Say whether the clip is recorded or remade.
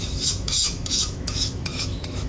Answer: remade